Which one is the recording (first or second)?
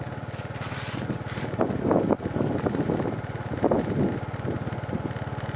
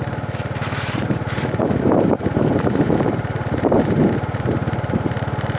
first